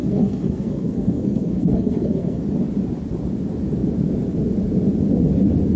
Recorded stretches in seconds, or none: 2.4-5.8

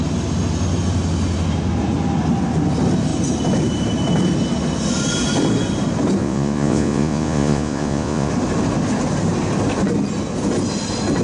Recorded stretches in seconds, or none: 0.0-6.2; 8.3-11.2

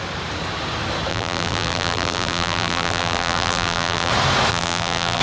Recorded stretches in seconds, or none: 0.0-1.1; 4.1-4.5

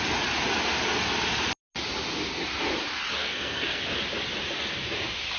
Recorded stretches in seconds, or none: 0.0-3.2; 3.8-5.4

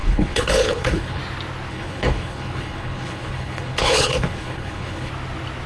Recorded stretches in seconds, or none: 1.2-1.7; 5.1-5.7

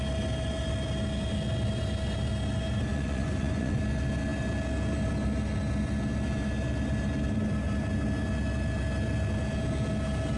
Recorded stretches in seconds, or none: 0.0-2.9; 3.8-10.4